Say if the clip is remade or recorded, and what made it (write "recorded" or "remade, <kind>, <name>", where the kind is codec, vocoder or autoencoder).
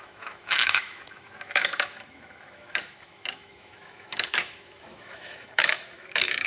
remade, autoencoder, DAC-VAE